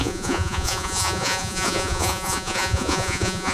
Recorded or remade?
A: remade